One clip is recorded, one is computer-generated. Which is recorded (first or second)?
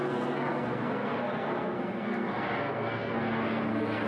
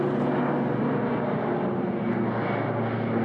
second